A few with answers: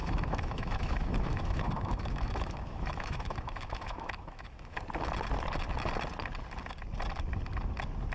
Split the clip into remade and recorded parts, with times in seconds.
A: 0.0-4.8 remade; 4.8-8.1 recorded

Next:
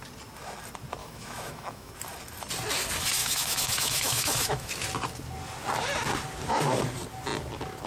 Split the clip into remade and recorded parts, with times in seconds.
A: 0.0-1.0 recorded; 1.0-1.9 remade; 1.9-3.2 recorded; 3.2-4.7 remade; 4.7-7.9 recorded

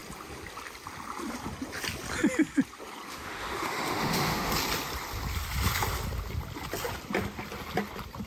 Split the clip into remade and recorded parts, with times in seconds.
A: 0.0-3.1 recorded; 3.1-4.5 remade; 4.5-8.3 recorded

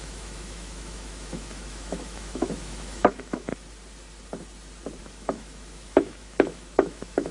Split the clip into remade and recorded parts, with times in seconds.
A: 0.0-3.5 remade; 3.5-5.0 recorded; 5.0-7.3 remade